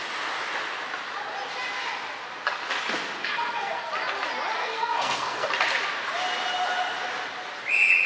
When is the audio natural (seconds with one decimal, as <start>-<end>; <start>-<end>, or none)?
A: 0.0-3.2; 3.9-4.6; 5.5-8.1